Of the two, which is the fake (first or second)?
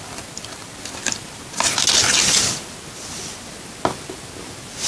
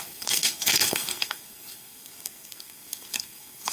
second